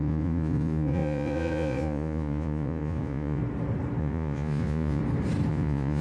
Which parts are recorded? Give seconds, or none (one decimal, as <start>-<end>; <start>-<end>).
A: 3.4-4.0; 5.0-5.5